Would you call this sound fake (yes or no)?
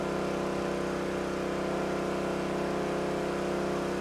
no